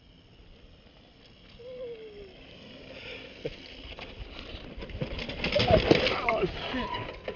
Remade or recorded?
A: recorded